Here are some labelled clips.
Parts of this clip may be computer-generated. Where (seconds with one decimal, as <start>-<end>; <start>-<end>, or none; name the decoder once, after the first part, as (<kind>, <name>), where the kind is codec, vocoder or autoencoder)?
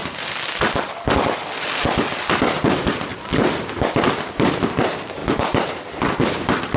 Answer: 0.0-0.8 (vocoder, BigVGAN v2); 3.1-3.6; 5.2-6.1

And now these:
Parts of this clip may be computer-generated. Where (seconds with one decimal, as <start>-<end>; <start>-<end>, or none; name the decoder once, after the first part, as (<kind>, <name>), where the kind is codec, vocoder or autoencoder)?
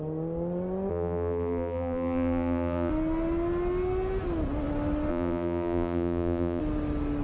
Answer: 0.9-2.9 (vocoder, BigVGAN v2); 5.1-6.6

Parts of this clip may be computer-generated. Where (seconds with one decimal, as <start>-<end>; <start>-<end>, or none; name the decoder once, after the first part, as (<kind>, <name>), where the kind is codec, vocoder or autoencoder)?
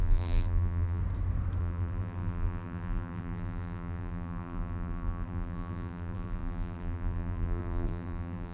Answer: 0.0-1.0 (vocoder, BigVGAN v2); 1.6-8.5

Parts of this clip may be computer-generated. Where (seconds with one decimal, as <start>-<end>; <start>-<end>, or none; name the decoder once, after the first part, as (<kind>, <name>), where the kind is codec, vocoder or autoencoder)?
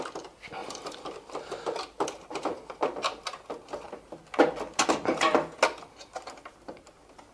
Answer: 0.6-1.8 (vocoder, BigVGAN v2)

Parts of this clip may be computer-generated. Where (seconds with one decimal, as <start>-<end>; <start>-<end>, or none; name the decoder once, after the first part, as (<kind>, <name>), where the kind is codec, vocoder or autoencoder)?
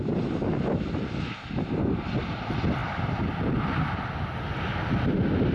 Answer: none